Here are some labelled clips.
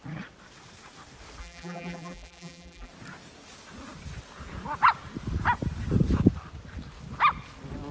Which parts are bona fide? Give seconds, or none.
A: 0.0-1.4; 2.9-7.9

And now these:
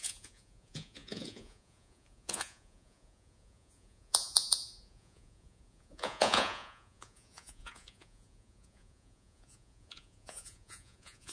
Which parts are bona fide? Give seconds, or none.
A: none

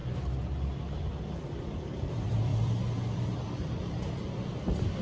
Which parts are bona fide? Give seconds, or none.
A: 0.0-1.8

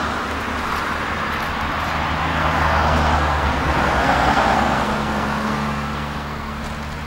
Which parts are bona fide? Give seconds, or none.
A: 0.0-2.3; 6.6-7.1

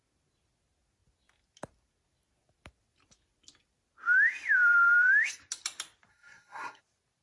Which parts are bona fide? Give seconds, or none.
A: 0.0-6.1; 6.8-7.2

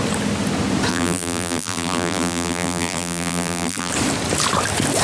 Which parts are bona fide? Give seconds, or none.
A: 0.0-0.9; 3.9-5.0